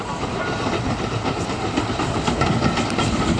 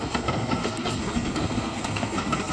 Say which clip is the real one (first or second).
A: first